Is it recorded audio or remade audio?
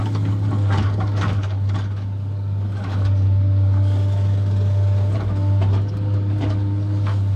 remade